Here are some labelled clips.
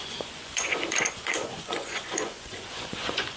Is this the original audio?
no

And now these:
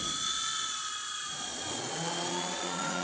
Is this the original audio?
no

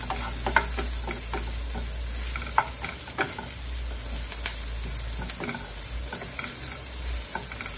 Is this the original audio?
yes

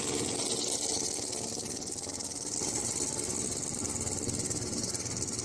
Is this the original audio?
yes